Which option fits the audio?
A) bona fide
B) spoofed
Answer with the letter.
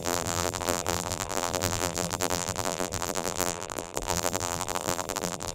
B